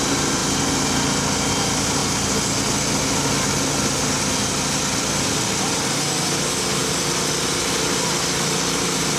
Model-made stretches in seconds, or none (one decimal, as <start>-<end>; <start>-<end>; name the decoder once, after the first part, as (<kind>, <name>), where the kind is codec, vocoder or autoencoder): none